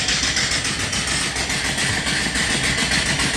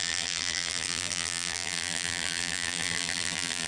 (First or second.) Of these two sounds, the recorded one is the first